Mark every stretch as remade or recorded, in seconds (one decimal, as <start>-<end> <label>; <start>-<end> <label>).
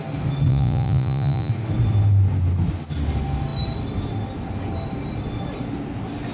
0.0-0.5 recorded; 0.5-1.5 remade; 1.5-6.3 recorded